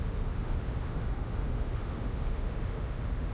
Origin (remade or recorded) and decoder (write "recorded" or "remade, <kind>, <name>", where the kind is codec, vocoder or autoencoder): remade, autoencoder, DAC-VAE